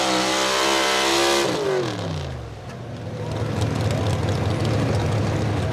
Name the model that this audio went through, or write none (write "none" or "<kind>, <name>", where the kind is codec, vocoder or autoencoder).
none